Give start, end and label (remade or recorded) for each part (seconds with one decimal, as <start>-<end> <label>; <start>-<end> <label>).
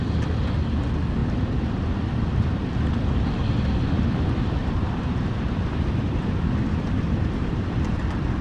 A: 0.0-4.6 recorded; 4.6-8.0 remade; 8.0-8.4 recorded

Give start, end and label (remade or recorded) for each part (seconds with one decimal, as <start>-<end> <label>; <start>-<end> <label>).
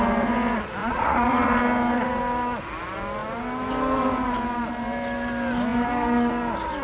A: 0.0-0.8 recorded; 0.8-1.6 remade; 1.6-6.8 recorded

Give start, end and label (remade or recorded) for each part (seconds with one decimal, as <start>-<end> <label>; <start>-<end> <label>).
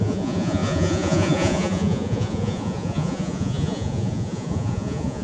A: 0.0-5.2 remade